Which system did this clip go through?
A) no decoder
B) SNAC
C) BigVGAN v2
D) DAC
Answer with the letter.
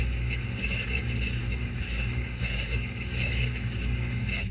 D